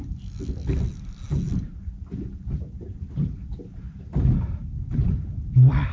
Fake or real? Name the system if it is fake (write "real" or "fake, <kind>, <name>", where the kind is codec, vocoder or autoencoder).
real